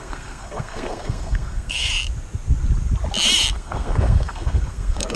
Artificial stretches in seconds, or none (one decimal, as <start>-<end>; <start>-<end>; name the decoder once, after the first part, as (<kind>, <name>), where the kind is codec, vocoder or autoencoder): 0.0-1.9 (codec, SNAC); 3.5-5.2